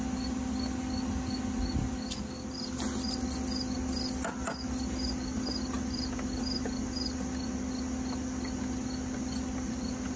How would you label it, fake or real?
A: real